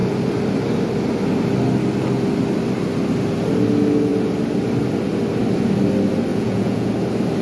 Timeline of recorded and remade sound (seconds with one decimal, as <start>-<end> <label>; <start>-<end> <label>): 0.0-6.3 recorded; 6.3-6.9 remade; 6.9-7.4 recorded